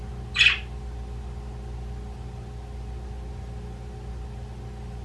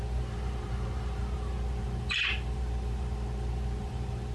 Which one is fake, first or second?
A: second